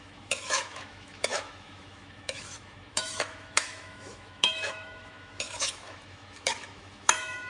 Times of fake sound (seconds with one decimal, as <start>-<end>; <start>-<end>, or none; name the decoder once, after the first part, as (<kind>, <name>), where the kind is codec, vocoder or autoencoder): 0.0-7.5 (autoencoder, DAC-VAE)